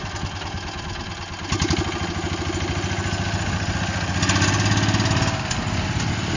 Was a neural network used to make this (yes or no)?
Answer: no